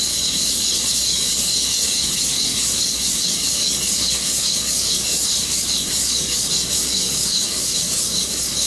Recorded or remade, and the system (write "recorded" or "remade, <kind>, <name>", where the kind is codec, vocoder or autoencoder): remade, codec, DAC